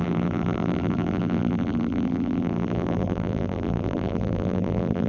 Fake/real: fake